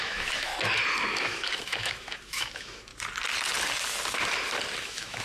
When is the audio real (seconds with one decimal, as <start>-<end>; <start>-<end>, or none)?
0.5-1.1; 2.9-4.8